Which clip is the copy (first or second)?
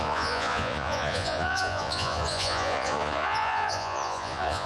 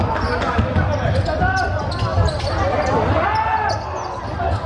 first